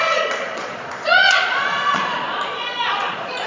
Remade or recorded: remade